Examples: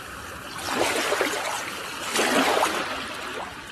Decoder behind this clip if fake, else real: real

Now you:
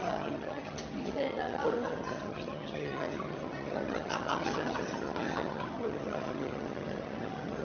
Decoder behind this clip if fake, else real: fake, vocoder, HiFi-GAN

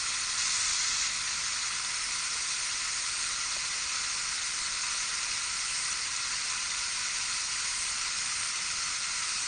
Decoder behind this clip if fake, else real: real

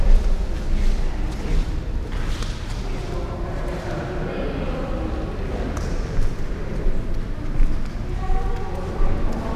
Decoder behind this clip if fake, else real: real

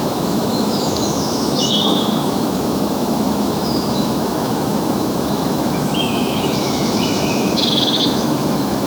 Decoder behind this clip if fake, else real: fake, autoencoder, DAC-VAE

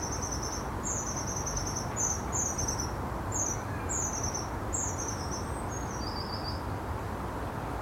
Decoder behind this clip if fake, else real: real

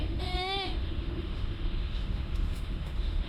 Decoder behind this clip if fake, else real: fake, autoencoder, DAC-VAE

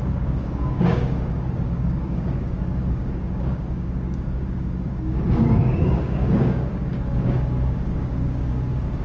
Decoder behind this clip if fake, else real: fake, codec, DAC